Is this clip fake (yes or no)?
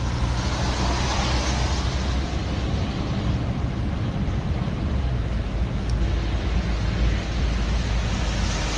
no